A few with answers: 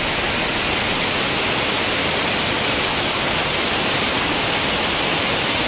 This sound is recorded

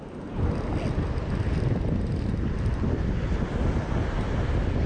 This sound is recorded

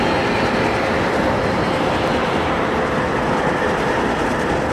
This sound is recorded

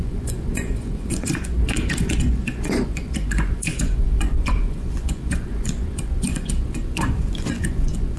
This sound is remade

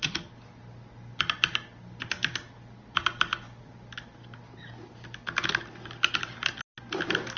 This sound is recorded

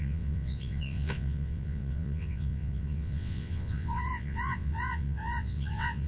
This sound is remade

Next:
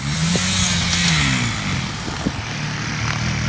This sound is recorded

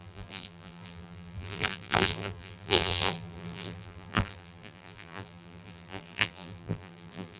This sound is remade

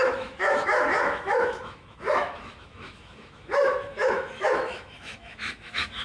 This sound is remade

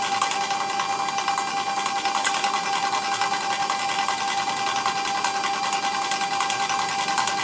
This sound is recorded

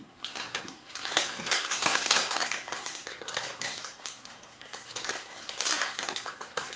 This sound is remade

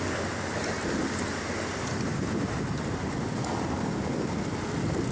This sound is recorded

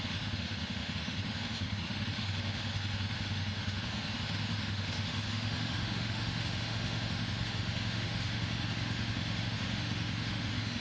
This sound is remade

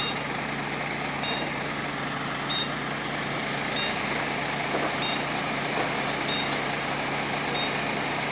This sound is recorded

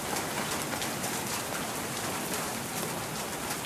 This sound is recorded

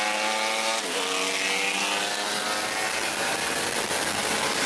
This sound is recorded